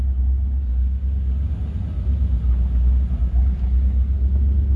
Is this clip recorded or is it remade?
recorded